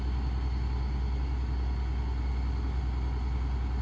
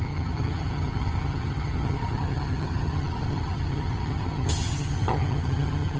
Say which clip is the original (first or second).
first